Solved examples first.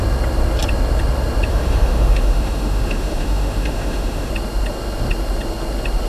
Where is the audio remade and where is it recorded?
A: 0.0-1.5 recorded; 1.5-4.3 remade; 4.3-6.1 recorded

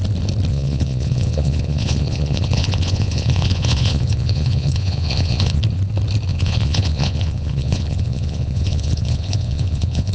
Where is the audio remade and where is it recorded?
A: 0.0-0.5 recorded; 0.5-5.6 remade; 5.6-6.3 recorded; 6.3-10.1 remade

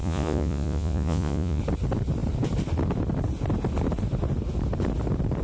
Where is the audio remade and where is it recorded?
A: 0.0-1.6 remade; 1.6-5.4 recorded

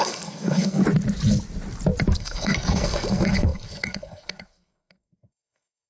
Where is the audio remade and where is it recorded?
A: 0.0-0.8 remade; 0.8-2.2 recorded; 2.2-5.9 remade

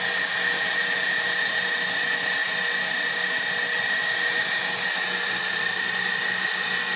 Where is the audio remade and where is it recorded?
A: 0.0-7.0 recorded